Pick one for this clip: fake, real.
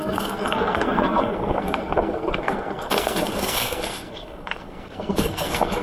fake